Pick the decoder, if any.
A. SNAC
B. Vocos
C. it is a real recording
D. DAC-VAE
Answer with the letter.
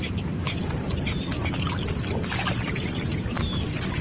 C